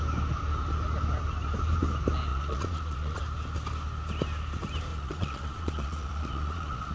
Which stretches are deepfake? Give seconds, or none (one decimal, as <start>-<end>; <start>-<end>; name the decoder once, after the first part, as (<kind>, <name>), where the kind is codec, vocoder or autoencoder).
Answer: 2.3-3.2 (vocoder, Vocos); 4.9-6.9